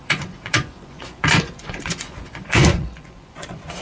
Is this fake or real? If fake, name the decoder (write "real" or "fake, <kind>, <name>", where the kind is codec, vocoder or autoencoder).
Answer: fake, vocoder, Vocos